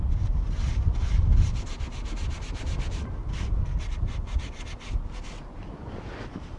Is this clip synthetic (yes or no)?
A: no